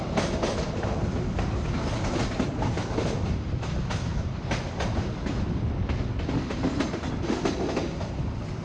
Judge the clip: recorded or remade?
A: recorded